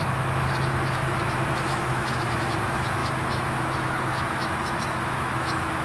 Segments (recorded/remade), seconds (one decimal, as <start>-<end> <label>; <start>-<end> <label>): 0.0-5.8 remade